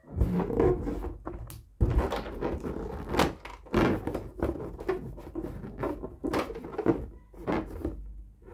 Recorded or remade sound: recorded